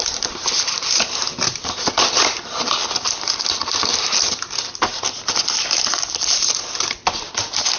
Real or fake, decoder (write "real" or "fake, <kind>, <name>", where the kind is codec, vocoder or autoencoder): real